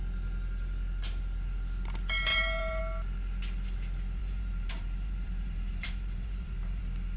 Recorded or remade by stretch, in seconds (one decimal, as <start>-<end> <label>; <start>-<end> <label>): 0.0-2.3 recorded; 2.3-2.8 remade; 2.8-4.2 recorded; 4.2-6.8 remade; 6.8-7.2 recorded